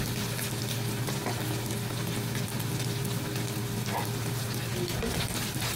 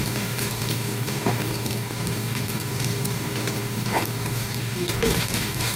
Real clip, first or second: first